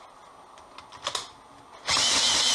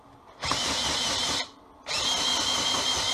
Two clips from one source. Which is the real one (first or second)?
first